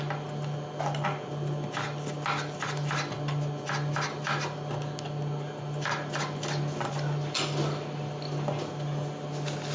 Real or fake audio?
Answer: real